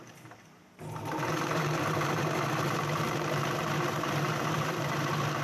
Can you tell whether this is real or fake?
fake